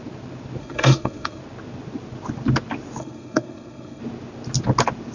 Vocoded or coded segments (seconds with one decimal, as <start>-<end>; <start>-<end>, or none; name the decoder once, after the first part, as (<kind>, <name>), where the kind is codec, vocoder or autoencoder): 0.6-1.4 (codec, SNAC); 3.0-4.0